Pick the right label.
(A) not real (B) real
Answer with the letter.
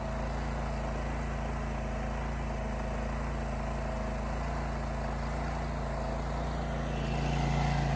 B